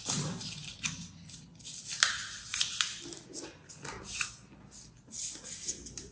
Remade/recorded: recorded